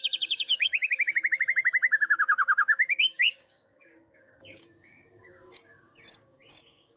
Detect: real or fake fake